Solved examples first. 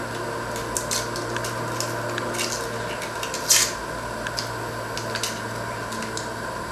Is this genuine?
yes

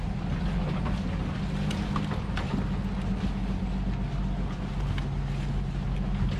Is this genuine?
yes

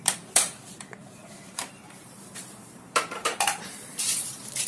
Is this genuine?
no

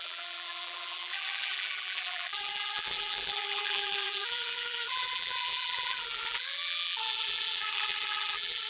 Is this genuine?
no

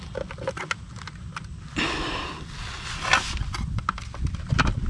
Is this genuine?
yes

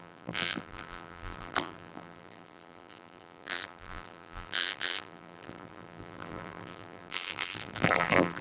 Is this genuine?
no